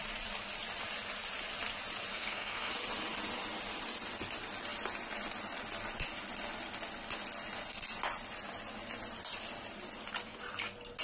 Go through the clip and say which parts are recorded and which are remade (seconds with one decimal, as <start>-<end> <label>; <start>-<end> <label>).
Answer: 0.0-2.1 recorded; 2.1-2.7 remade; 2.7-11.0 recorded